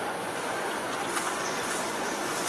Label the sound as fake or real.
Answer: fake